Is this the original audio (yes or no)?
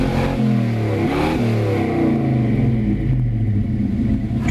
yes